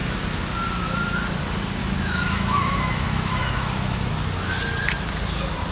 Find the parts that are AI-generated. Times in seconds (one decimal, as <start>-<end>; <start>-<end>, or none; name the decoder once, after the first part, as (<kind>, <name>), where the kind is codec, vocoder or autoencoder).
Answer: 1.8-4.1 (autoencoder, DAC-VAE)